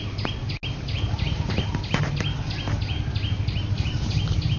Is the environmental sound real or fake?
real